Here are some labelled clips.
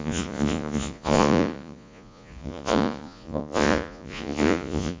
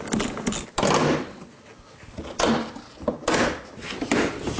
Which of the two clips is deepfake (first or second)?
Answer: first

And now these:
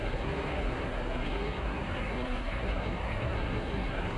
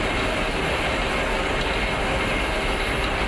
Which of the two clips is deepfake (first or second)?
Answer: first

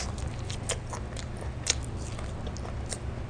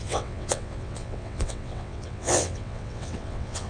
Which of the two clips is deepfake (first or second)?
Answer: second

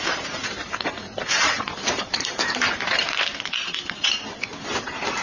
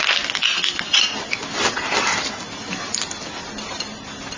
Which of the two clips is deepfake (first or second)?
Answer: first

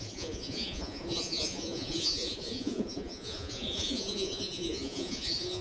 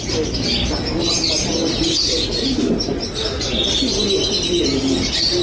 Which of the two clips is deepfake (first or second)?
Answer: first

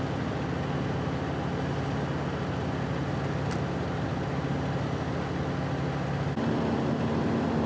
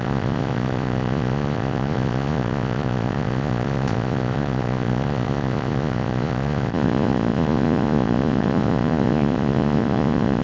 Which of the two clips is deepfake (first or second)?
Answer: second